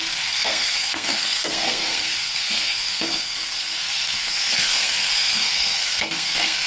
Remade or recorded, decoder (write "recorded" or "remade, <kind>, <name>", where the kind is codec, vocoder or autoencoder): remade, codec, SNAC